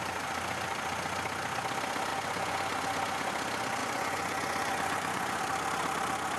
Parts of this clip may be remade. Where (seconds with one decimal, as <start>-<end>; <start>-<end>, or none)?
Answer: 2.1-3.3; 3.8-5.4